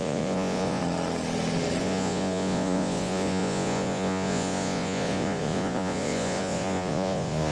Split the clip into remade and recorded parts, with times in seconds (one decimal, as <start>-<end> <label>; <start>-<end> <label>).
0.0-0.8 remade; 0.8-1.8 recorded; 1.8-7.5 remade